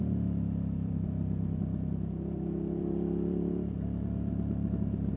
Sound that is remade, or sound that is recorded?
remade